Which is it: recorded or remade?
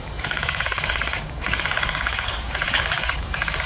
remade